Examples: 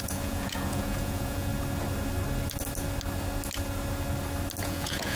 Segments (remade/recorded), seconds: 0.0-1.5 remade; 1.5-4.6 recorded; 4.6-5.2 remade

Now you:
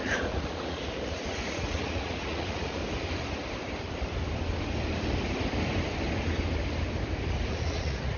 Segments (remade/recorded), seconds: 0.0-2.8 remade; 2.8-7.5 recorded; 7.5-8.2 remade

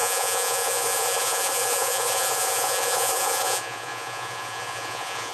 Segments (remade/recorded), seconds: 0.0-5.3 remade

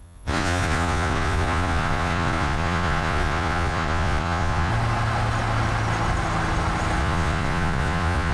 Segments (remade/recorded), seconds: 0.0-4.7 remade; 4.7-7.0 recorded; 7.0-8.3 remade

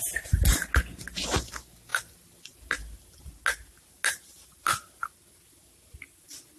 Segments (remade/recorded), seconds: 0.0-6.6 recorded

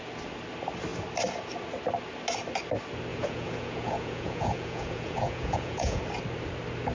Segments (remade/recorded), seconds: 0.0-3.1 recorded; 3.1-6.0 remade; 6.0-6.9 recorded

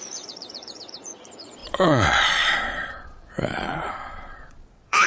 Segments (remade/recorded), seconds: 0.0-5.1 remade

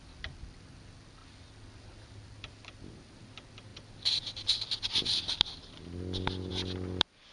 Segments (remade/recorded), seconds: 0.0-7.3 recorded